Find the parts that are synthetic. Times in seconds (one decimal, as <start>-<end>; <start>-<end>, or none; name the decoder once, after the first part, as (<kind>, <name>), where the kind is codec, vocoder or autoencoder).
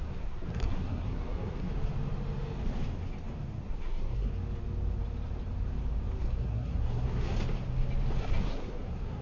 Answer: 0.0-1.7 (codec, SNAC); 3.7-4.3; 6.2-7.3; 8.2-9.2